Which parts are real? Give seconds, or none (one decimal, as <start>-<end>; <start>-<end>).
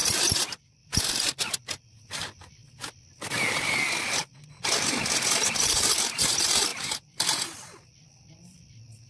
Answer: 2.6-5.5